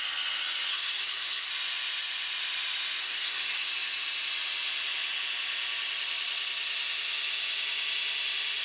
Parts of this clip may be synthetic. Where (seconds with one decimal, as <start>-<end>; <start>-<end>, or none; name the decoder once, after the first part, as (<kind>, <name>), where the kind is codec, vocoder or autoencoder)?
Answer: 0.7-1.5 (codec, SNAC); 3.0-3.7